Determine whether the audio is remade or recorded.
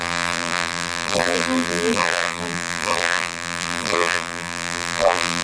remade